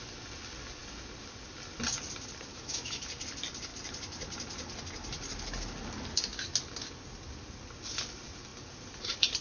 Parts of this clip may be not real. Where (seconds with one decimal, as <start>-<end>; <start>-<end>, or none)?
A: 2.5-3.0